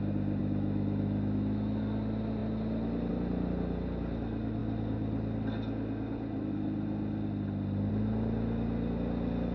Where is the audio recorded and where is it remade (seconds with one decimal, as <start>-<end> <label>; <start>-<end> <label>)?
0.0-0.4 recorded; 0.4-1.8 remade; 1.8-9.5 recorded